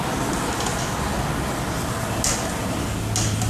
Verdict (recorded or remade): recorded